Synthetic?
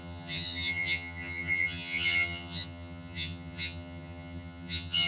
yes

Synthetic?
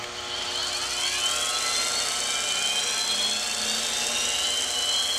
no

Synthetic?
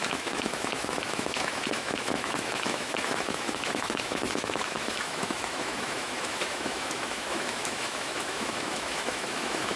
yes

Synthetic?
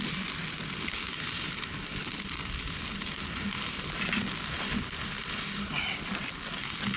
no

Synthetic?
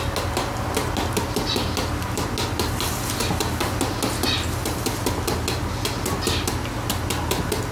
no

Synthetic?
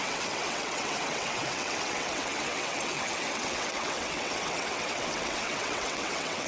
yes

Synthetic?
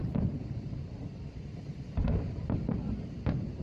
yes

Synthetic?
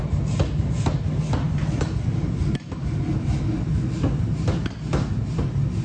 no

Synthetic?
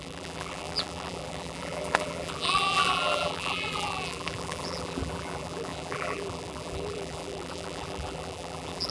yes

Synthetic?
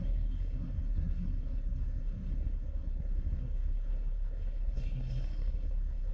yes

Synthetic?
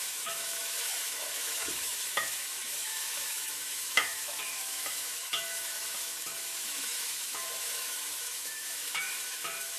yes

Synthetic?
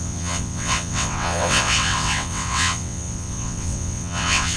yes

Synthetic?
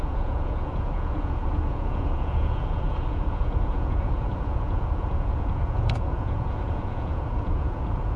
yes